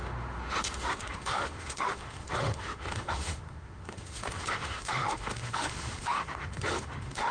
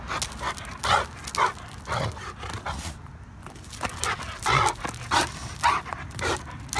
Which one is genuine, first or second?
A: second